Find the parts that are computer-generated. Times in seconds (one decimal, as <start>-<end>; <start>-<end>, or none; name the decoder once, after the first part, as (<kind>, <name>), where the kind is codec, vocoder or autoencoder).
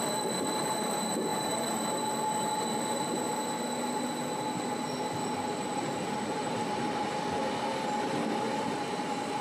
1.3-2.1 (vocoder, BigVGAN v2); 5.2-6.7